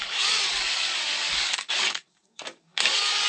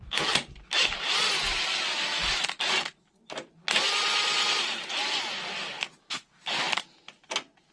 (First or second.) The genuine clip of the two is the second